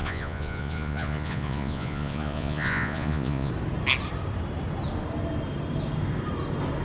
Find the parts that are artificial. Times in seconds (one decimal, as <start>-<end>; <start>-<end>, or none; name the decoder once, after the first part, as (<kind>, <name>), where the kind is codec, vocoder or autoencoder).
0.0-3.5 (vocoder, Vocos)

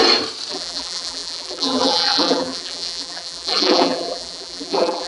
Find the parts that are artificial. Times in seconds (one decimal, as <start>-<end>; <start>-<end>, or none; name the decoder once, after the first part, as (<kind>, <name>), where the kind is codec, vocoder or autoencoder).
0.5-5.1 (vocoder, BigVGAN v2)